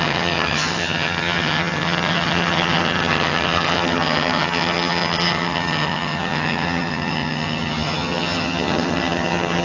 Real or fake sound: fake